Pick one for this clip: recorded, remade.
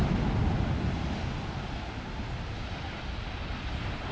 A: recorded